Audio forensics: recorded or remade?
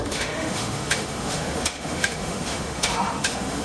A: remade